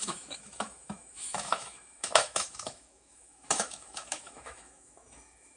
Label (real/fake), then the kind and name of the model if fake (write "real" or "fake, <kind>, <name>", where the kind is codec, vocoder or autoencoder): fake, autoencoder, DAC-VAE